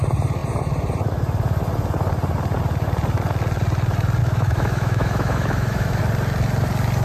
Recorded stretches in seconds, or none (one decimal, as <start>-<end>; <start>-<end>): 0.0-4.2; 6.0-7.0